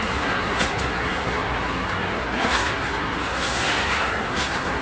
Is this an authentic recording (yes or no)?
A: no